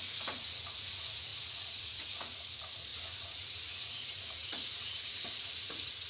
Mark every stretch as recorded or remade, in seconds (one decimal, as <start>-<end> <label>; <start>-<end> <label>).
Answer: 0.0-6.1 remade